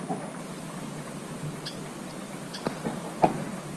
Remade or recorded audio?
recorded